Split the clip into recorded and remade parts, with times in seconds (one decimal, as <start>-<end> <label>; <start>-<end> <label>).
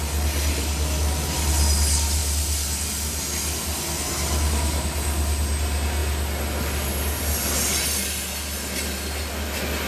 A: 0.0-9.9 recorded